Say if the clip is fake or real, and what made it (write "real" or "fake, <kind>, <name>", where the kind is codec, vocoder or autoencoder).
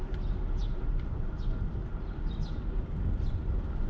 real